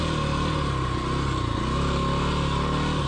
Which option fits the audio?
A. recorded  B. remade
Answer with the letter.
A